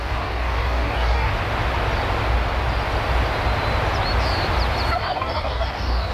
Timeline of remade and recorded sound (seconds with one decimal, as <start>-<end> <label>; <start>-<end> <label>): 0.0-1.3 remade; 1.3-5.0 recorded; 5.0-6.1 remade